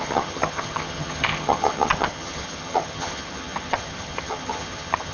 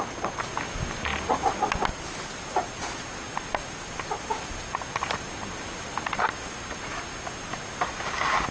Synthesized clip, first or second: first